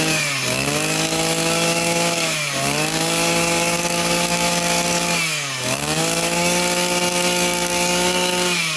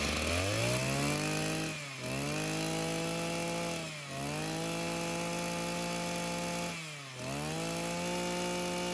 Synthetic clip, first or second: first